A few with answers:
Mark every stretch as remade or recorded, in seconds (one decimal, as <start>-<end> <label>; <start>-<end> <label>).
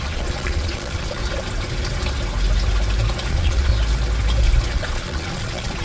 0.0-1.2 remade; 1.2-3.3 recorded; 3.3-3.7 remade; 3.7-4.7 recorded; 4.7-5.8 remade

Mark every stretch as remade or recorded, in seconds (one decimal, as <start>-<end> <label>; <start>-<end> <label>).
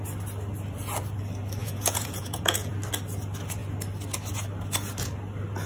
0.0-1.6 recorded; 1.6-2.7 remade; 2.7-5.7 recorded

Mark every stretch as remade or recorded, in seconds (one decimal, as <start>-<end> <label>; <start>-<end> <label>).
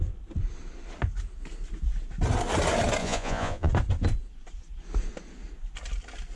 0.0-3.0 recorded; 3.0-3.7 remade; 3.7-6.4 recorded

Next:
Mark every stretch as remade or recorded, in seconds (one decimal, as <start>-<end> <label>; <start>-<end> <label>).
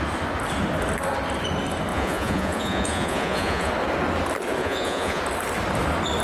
0.0-1.9 recorded; 1.9-3.7 remade; 3.7-4.6 recorded; 4.6-5.2 remade; 5.2-6.2 recorded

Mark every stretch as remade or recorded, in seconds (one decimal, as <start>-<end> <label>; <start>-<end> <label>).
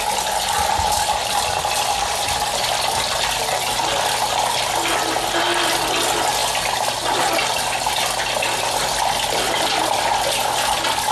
0.0-11.1 recorded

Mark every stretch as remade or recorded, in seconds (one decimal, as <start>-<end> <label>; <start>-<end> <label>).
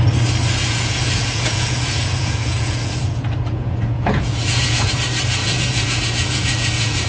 0.0-0.6 recorded; 0.6-4.9 remade; 4.9-5.4 recorded; 5.4-7.1 remade